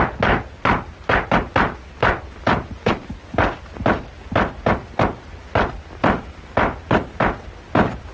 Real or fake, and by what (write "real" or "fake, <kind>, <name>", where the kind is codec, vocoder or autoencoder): real